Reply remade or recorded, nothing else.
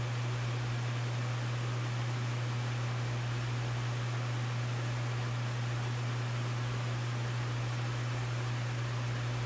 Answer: recorded